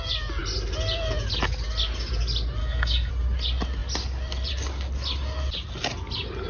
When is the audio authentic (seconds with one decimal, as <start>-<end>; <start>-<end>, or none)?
0.0-2.6; 3.1-6.5